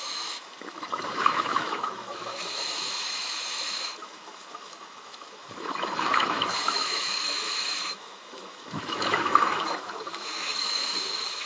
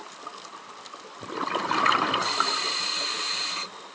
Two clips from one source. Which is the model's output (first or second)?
first